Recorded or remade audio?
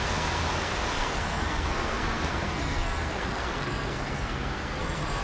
remade